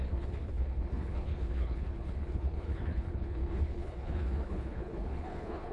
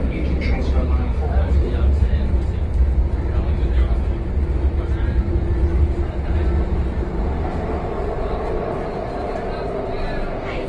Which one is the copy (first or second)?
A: first